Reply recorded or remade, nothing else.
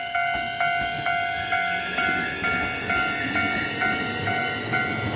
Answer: recorded